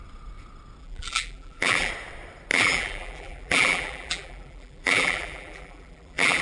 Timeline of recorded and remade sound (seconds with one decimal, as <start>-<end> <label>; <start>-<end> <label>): 0.0-0.8 recorded; 0.8-1.9 remade; 1.9-2.5 recorded; 2.5-6.4 remade